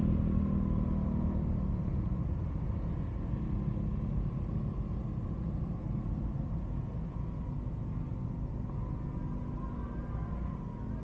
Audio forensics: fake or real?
real